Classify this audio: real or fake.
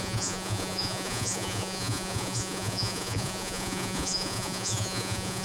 fake